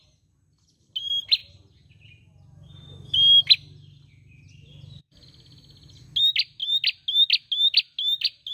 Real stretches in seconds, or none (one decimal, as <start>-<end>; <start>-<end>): 0.0-8.5